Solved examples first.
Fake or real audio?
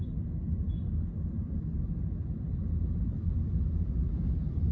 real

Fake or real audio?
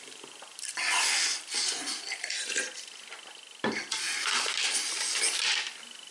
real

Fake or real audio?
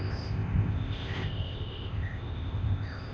fake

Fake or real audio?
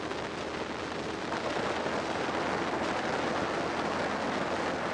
real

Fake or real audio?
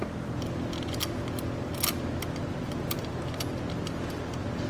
real